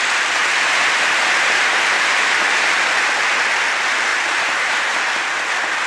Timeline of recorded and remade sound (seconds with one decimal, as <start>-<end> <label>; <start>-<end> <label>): 0.0-0.4 recorded; 0.4-2.8 remade; 2.8-4.1 recorded; 4.1-5.0 remade; 5.0-5.9 recorded